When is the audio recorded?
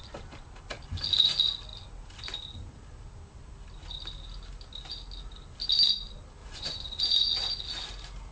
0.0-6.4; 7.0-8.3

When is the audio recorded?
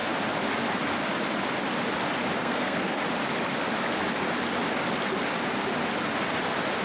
0.0-2.4; 3.0-6.8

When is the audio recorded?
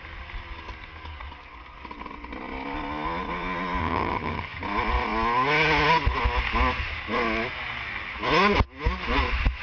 0.0-3.8; 4.6-9.6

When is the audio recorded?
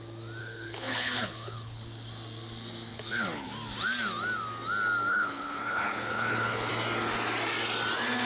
0.0-0.4; 1.8-2.9; 3.5-5.1; 6.7-8.3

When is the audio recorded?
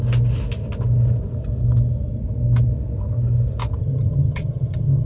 0.0-3.8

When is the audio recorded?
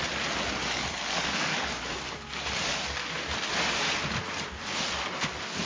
0.0-0.6; 1.8-5.7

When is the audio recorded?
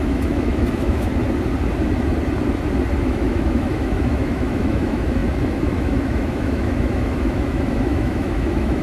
1.1-3.0